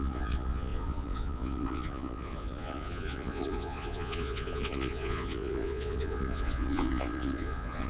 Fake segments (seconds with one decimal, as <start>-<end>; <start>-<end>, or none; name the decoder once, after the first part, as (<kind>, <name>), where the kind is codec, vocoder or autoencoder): 0.0-7.9 (vocoder, Vocos)